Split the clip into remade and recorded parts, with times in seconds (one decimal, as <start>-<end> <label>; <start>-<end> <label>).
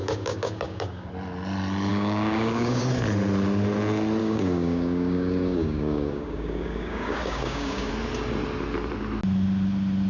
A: 0.0-1.1 remade; 1.1-1.9 recorded; 1.9-2.8 remade; 2.8-4.2 recorded; 4.2-7.9 remade; 7.9-10.1 recorded